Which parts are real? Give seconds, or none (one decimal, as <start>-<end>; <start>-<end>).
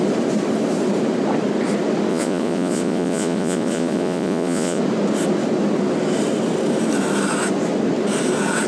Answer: 0.0-2.1; 4.8-8.7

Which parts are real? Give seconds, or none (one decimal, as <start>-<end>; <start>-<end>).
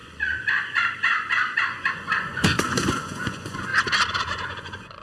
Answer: 3.7-4.3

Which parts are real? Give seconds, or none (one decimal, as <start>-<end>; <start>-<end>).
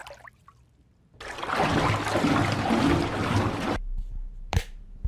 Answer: 0.0-5.1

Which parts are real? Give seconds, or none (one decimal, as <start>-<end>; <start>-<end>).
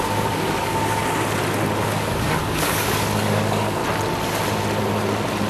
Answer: 1.0-1.8; 3.8-5.5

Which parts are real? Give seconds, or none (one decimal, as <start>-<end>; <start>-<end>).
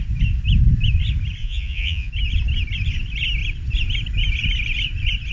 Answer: 0.0-1.4; 2.1-5.3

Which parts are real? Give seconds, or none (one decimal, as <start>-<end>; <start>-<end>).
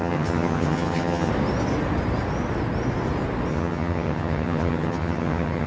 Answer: 1.3-3.5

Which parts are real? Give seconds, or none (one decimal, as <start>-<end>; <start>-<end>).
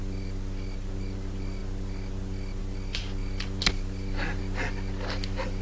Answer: 0.0-5.6